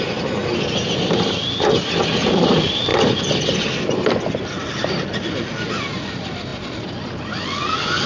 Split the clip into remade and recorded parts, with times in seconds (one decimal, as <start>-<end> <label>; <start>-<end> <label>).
0.0-0.4 remade; 0.4-2.3 recorded; 2.3-2.9 remade; 2.9-4.5 recorded; 4.5-8.1 remade